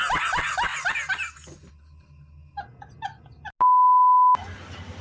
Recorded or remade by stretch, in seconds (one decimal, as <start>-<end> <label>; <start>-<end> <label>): 0.0-5.0 recorded